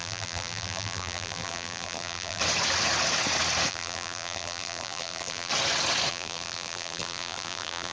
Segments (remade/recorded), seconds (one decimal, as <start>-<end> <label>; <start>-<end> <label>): 0.0-2.4 remade; 2.4-3.7 recorded; 3.7-5.5 remade; 5.5-6.1 recorded; 6.1-7.9 remade